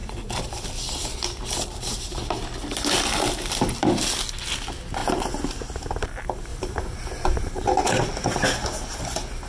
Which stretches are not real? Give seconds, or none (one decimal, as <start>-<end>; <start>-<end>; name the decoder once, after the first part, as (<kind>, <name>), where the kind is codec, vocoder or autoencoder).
5.0-5.6 (vocoder, BigVGAN v2); 6.5-7.9